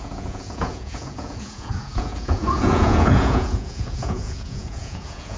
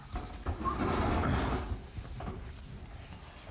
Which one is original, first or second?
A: second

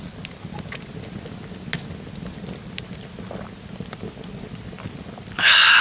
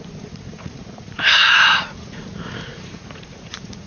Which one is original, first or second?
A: first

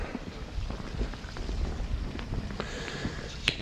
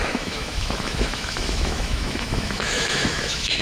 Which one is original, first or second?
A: first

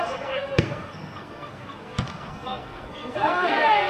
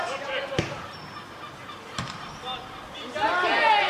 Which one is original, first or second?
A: second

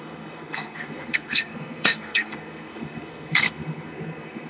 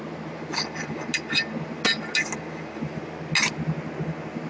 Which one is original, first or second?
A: second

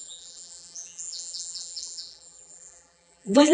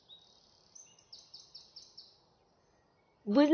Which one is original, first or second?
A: second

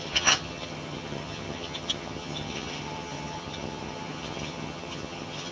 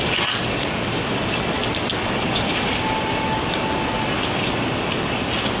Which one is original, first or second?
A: second